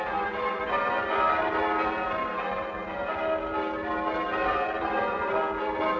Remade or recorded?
recorded